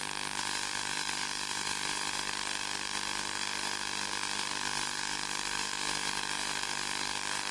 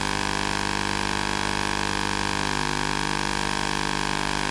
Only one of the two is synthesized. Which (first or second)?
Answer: first